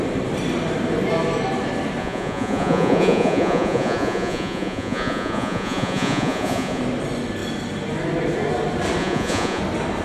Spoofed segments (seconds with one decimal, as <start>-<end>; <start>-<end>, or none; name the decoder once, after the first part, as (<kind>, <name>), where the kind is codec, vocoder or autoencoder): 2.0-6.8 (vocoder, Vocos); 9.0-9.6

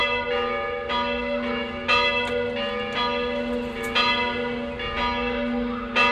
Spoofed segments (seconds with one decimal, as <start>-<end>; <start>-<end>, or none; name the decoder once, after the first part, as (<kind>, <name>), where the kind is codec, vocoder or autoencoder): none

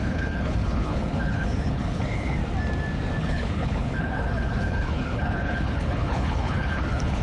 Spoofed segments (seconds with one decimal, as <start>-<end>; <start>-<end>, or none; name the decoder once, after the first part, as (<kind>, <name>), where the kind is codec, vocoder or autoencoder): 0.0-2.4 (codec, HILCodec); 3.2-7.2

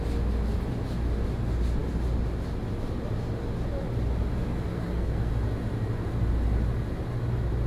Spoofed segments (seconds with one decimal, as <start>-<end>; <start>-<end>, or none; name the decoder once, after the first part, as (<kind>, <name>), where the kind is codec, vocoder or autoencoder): 4.7-5.3 (codec, SNAC)

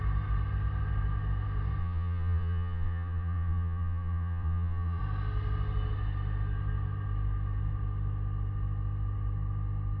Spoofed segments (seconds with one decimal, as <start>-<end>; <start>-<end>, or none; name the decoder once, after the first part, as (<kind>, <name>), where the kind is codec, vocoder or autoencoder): 1.8-5.0 (vocoder, Vocos)

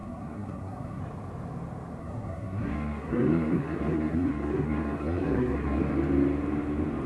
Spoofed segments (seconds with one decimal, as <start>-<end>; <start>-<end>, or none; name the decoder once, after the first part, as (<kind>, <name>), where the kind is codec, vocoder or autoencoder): 0.0-1.0 (codec, SNAC); 2.0-5.8

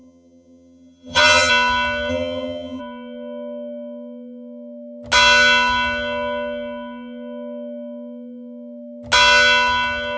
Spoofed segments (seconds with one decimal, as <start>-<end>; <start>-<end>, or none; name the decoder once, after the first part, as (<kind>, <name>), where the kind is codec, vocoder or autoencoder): 0.0-1.5 (vocoder, HiFi-GAN); 2.1-2.8

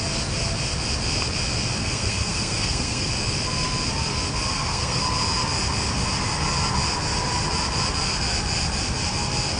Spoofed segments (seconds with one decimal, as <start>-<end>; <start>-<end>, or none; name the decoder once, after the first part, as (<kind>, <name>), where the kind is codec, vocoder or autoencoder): 1.8-3.1 (codec, SNAC); 4.5-5.0